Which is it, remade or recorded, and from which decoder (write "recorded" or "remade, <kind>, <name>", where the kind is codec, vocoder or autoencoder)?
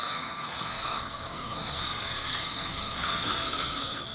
remade, codec, SNAC